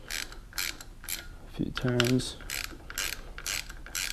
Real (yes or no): yes